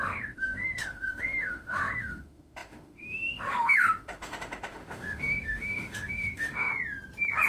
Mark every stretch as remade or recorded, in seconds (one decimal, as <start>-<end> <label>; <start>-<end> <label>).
0.0-6.7 remade; 6.7-7.5 recorded

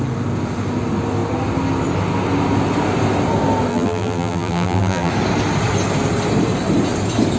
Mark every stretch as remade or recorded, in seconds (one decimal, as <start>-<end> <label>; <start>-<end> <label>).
0.0-3.7 recorded; 3.7-5.1 remade; 5.1-7.4 recorded

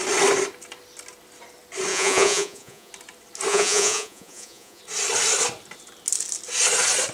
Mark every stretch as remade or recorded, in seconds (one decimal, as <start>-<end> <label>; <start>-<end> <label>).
0.0-1.9 recorded; 1.9-2.9 remade; 2.9-3.5 recorded; 3.5-4.8 remade; 4.8-7.1 recorded

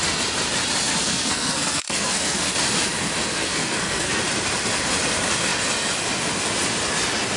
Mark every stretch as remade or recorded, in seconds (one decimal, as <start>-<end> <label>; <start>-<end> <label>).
0.0-0.9 recorded; 0.9-2.5 remade; 2.5-3.3 recorded; 3.3-4.2 remade; 4.2-7.4 recorded

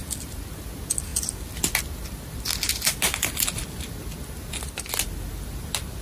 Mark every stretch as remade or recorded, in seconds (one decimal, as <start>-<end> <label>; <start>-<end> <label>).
0.0-6.0 recorded

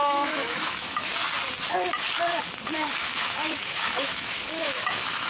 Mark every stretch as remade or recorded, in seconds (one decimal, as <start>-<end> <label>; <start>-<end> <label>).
0.0-1.1 remade; 1.1-3.0 recorded; 3.0-5.3 remade

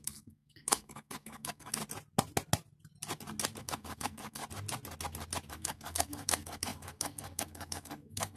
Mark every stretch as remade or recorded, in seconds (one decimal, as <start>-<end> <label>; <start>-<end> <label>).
0.0-1.8 remade; 1.8-3.6 recorded; 3.6-4.4 remade; 4.4-5.5 recorded; 5.5-8.4 remade